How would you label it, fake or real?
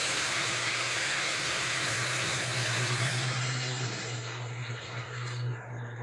fake